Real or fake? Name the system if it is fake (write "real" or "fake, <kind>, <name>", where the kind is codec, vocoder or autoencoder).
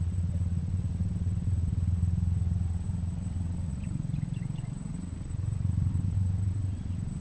fake, vocoder, WaveNeXt